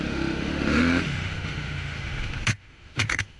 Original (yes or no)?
no